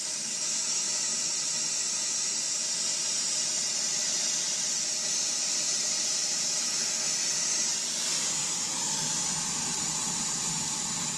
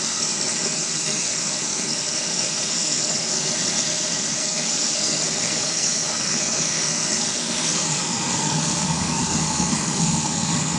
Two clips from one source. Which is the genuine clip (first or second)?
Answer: first